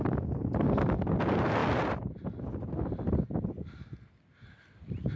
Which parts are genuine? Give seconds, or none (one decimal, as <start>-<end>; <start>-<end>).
0.0-5.2